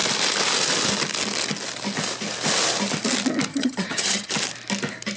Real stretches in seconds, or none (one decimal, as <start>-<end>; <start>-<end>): 0.0-3.5; 4.3-5.2